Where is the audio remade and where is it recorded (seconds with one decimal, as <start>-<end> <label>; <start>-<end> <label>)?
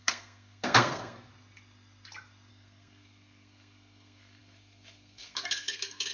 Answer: 0.0-1.3 remade; 1.3-2.5 recorded; 2.5-6.1 remade